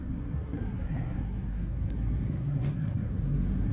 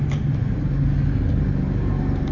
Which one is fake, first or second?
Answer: first